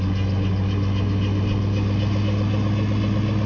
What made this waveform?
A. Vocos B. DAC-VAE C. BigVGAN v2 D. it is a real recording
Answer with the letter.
D